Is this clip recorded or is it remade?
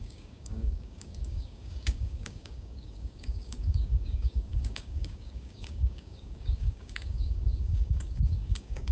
remade